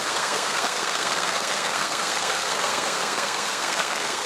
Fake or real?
fake